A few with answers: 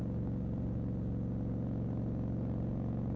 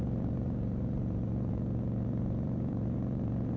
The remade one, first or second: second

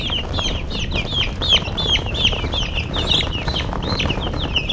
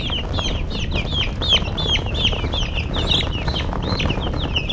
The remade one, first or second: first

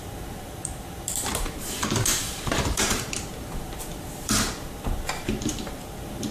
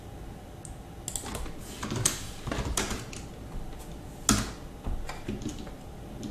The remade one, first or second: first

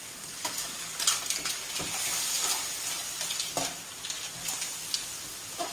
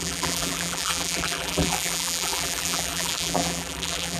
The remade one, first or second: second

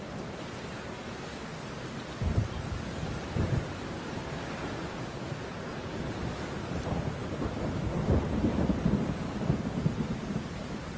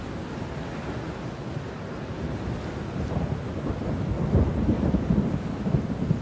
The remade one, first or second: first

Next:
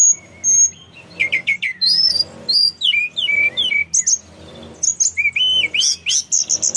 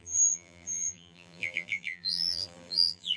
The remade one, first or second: second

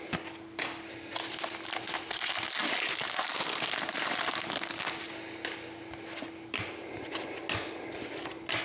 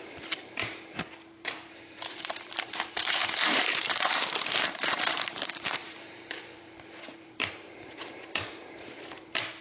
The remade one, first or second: second